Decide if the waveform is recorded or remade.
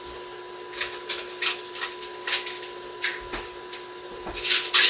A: remade